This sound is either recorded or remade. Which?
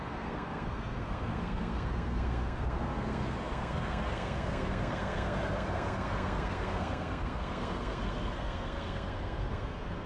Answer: remade